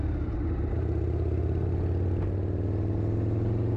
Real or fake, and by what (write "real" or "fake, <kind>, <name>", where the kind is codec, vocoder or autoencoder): real